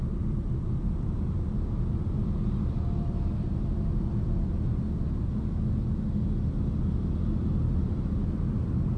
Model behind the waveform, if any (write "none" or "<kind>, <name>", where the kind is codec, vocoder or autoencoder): none